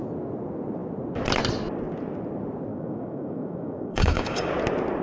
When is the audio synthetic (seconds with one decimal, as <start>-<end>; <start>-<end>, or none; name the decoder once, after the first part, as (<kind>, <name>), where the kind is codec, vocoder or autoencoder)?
2.7-4.5 (codec, DAC)